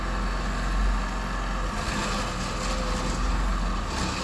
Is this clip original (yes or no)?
yes